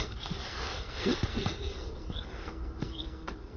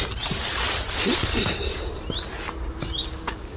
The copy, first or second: first